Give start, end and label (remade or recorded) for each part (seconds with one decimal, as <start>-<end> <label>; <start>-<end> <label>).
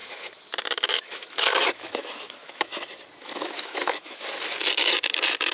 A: 0.0-2.8 remade; 2.8-3.2 recorded; 3.2-4.3 remade; 4.3-5.5 recorded